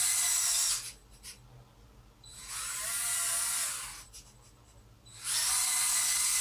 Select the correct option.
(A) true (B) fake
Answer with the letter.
A